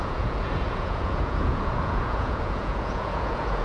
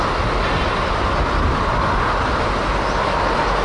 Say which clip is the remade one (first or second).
first